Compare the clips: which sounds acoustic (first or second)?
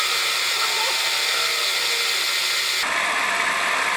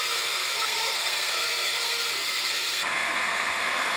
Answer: first